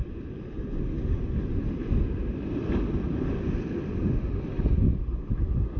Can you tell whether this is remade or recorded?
recorded